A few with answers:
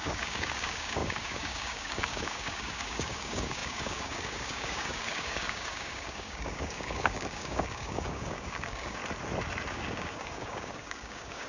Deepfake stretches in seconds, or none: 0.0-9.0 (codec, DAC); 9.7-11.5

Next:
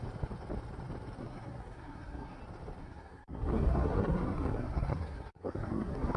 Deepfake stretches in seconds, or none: 1.2-2.4 (codec, SNAC); 2.8-6.2